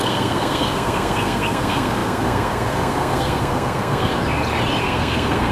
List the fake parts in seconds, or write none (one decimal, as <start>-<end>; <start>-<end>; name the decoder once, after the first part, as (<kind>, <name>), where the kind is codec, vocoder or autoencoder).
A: 0.0-4.1 (codec, SNAC); 4.8-5.5